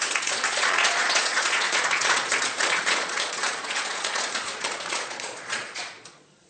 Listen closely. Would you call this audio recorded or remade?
remade